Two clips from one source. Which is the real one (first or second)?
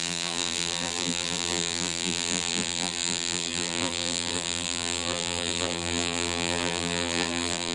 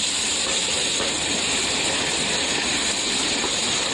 second